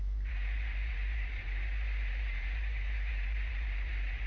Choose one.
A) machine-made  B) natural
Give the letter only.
A